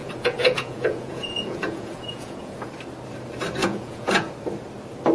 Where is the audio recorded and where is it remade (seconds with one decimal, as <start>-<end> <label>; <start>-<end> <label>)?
0.0-2.7 remade; 2.7-3.6 recorded; 3.6-4.3 remade; 4.3-5.1 recorded